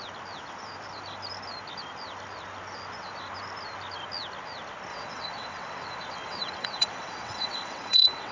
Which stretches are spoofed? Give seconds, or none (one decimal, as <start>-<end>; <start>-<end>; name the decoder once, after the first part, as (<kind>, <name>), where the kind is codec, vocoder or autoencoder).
4.9-8.3 (vocoder, WaveNeXt)